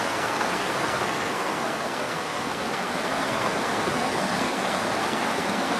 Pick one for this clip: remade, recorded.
remade